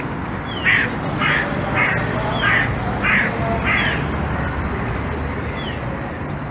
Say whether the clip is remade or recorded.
recorded